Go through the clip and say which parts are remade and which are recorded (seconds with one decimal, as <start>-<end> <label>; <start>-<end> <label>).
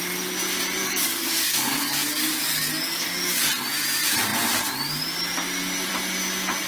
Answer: 0.0-0.8 recorded; 0.8-3.4 remade; 3.4-6.7 recorded